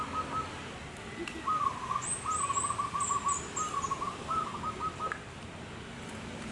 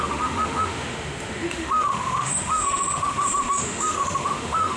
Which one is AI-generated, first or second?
second